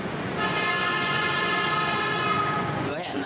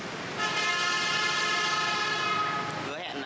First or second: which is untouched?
second